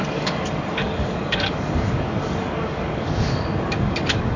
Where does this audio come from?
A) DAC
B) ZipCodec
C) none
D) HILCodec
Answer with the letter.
A